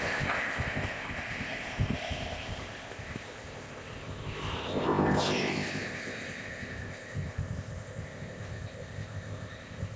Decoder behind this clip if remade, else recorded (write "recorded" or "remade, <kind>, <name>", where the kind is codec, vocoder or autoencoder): remade, codec, ZipCodec